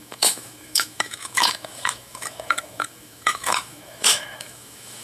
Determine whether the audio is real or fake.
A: fake